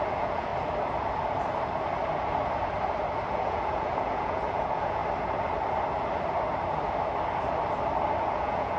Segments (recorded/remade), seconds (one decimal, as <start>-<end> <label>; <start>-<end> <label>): 0.0-0.5 remade; 0.5-3.3 recorded; 3.3-5.0 remade; 5.0-8.2 recorded; 8.2-8.8 remade